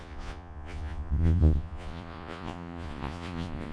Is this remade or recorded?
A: remade